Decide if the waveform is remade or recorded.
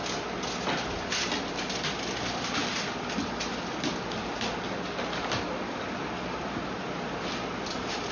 recorded